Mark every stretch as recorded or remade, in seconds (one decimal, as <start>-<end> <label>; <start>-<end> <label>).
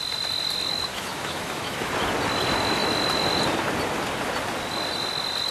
0.0-0.9 recorded; 0.9-1.9 remade; 1.9-5.5 recorded